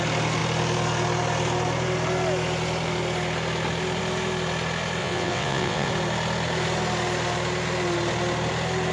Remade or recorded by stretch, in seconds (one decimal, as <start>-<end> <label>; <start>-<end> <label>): 0.0-5.0 recorded; 5.0-5.9 remade; 5.9-8.9 recorded